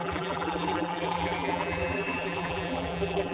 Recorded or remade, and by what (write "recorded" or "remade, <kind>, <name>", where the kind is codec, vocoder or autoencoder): remade, vocoder, BigVGAN v2